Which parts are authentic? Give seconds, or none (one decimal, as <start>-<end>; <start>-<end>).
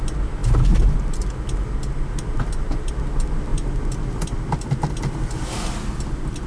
0.0-6.5